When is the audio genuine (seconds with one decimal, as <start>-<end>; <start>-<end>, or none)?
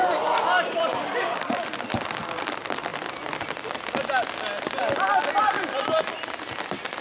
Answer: 1.7-7.0